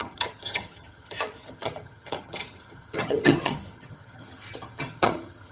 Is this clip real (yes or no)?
no